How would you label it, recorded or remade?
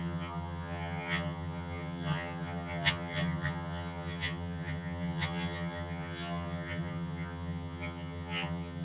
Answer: remade